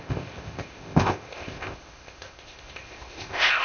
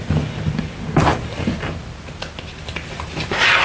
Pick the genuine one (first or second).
second